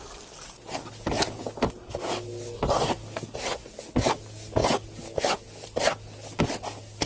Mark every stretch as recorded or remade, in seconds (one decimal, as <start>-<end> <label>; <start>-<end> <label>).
0.0-7.1 recorded